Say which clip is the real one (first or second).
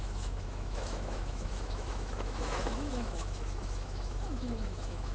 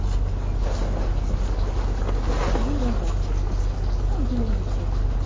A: second